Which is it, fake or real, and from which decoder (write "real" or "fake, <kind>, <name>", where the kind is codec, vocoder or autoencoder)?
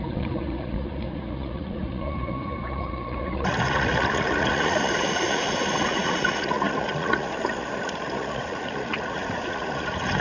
fake, vocoder, Vocos